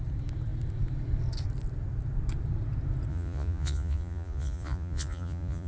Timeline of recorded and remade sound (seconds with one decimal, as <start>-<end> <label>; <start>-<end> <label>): 0.0-3.1 recorded; 3.1-5.7 remade